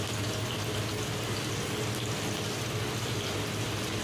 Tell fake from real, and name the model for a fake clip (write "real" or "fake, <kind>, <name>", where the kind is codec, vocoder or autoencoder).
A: real